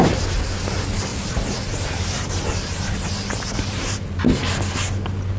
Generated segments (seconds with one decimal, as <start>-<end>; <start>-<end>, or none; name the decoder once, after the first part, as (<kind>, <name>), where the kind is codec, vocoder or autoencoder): 1.1-3.0 (vocoder, BigVGAN v2)